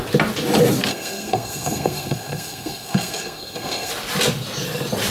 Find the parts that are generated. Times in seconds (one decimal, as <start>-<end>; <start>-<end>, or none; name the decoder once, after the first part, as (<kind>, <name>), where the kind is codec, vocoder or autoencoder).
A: 0.9-3.9 (codec, SNAC)